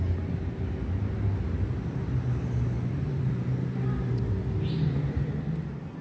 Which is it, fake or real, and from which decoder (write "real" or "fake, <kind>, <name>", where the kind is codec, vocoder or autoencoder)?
real